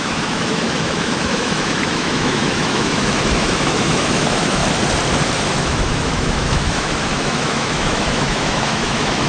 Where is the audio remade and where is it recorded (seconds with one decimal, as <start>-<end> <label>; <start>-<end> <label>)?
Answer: 0.0-4.6 remade; 4.6-5.6 recorded; 5.6-9.3 remade